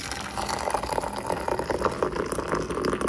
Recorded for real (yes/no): yes